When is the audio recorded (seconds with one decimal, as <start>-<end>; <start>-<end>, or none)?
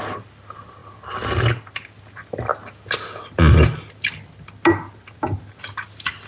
0.0-6.3